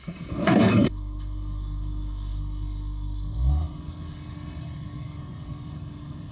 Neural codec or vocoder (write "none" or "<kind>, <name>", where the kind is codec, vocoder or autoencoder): codec, SNAC